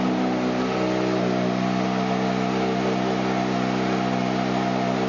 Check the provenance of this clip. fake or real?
real